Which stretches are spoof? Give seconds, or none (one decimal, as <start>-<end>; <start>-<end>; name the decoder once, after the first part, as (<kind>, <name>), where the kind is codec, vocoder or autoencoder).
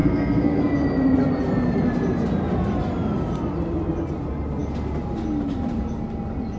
0.0-0.6 (codec, SNAC)